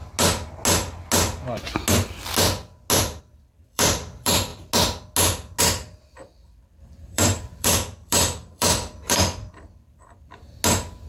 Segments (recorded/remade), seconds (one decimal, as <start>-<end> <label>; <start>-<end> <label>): 0.0-3.2 recorded; 3.2-4.5 remade; 4.5-5.6 recorded; 5.6-10.4 remade; 10.4-11.1 recorded